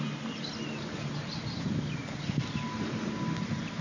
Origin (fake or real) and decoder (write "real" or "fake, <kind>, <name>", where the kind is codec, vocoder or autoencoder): real